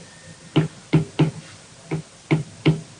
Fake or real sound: real